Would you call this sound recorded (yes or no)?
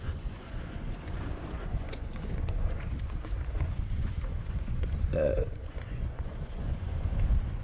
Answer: no